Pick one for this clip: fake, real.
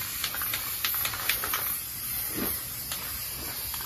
real